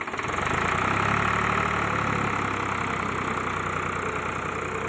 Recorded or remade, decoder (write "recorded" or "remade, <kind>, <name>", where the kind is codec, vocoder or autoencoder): recorded